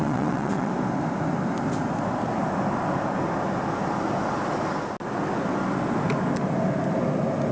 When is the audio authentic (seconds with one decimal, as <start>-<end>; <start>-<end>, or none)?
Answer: 0.7-7.5